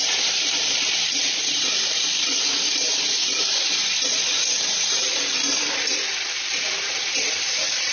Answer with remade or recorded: remade